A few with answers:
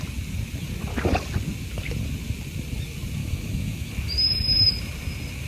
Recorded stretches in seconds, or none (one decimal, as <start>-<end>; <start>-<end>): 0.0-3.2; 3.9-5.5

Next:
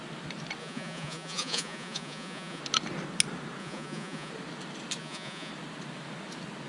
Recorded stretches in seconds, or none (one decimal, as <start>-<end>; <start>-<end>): 0.0-0.6; 2.6-3.6; 4.3-5.0; 5.5-6.7

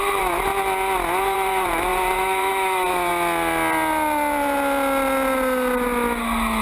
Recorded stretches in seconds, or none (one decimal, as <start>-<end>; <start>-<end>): 0.5-1.2; 3.1-6.6

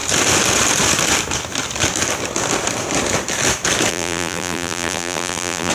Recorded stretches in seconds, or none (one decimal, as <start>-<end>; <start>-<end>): 0.0-3.9